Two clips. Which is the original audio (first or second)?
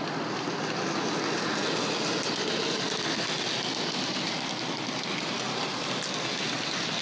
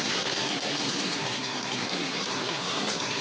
first